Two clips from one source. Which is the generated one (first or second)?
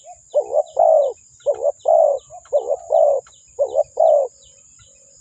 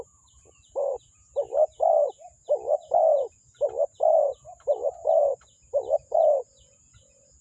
second